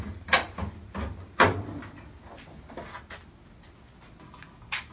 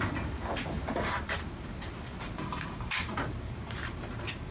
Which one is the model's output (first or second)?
second